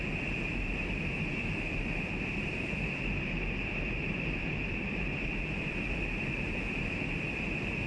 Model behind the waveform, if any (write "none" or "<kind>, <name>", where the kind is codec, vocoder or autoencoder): vocoder, BigVGAN v2